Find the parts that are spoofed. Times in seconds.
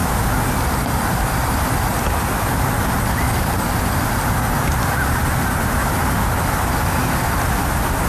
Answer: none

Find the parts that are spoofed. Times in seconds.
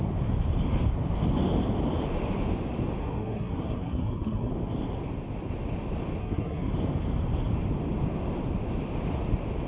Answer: 3.0-4.5 (codec, SNAC); 6.2-6.7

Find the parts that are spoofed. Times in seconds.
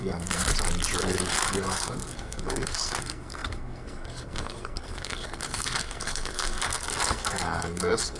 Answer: 0.0-0.5 (codec, SNAC); 1.0-8.2